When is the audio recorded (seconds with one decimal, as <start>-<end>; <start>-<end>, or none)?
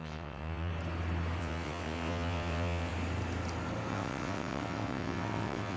0.7-1.4; 2.9-3.9